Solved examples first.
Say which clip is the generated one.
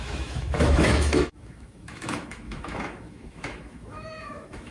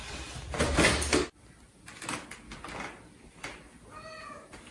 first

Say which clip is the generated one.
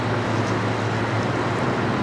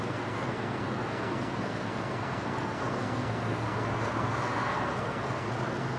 second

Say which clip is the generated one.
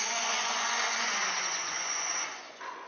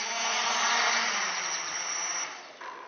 first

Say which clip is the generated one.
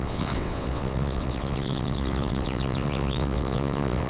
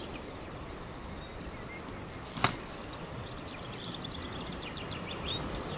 first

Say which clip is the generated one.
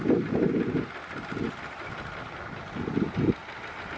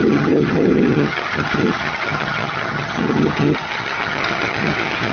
second